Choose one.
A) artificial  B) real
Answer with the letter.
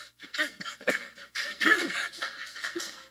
A